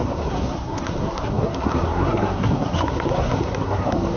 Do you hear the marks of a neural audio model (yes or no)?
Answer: yes